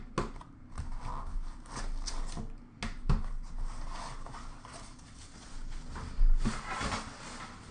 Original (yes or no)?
yes